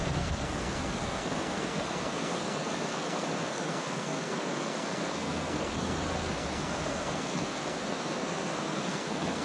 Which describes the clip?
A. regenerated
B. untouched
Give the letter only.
A